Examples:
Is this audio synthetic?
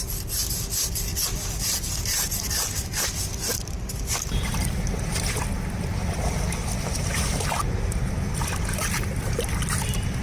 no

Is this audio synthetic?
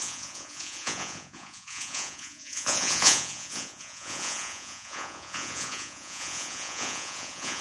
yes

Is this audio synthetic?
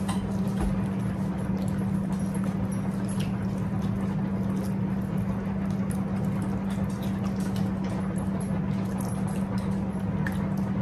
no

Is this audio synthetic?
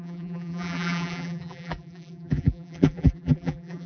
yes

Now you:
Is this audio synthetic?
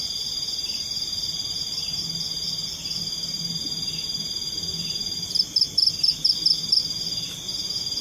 no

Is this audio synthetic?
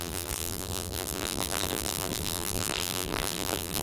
yes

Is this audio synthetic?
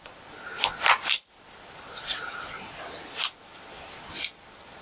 yes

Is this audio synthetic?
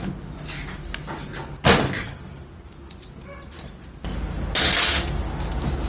no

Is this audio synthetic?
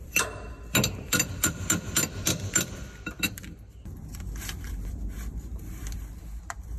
yes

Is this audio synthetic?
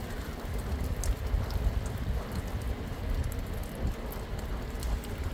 no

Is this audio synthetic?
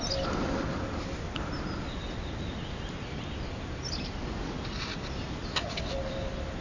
no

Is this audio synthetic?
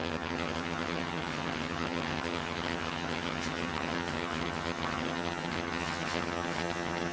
yes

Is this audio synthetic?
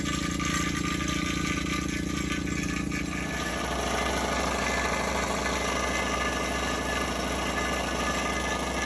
no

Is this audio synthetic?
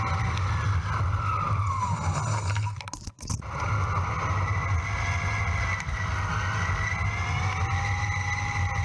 no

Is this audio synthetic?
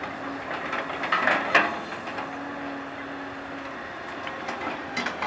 no